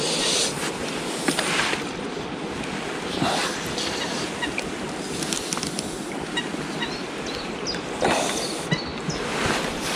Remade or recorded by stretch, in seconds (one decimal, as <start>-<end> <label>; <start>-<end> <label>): 0.0-10.0 recorded